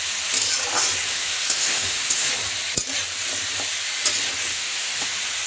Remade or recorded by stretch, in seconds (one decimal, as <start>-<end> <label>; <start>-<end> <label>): 0.0-1.1 recorded; 1.1-2.3 remade; 2.3-4.5 recorded; 4.5-5.1 remade; 5.1-5.5 recorded